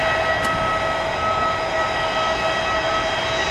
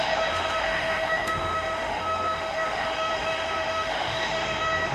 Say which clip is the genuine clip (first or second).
first